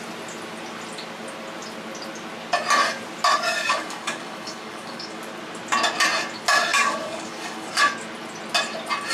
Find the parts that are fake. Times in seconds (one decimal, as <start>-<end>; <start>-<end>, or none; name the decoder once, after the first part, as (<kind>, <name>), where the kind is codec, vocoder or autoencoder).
3.3-5.2 (codec, DAC); 6.7-7.8